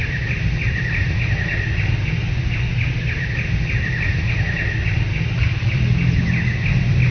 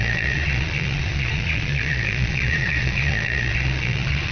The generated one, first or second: second